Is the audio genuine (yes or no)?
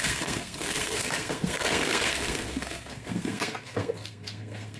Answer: no